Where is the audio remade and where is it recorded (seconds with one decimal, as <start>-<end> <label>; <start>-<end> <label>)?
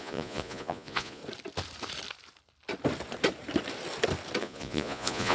0.0-1.2 remade; 1.2-4.4 recorded; 4.4-5.3 remade